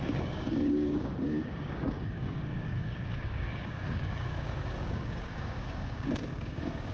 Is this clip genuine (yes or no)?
no